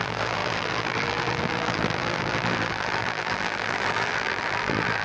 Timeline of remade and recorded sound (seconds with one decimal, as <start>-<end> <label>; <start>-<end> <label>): 0.0-5.0 remade